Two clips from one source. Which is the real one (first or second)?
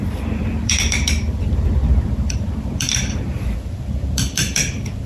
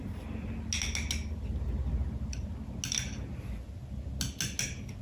second